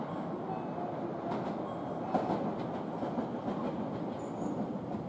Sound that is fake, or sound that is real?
real